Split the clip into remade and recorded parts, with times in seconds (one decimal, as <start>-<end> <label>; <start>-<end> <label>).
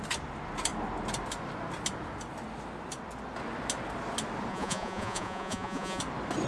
0.0-4.5 recorded; 4.5-6.0 remade; 6.0-6.5 recorded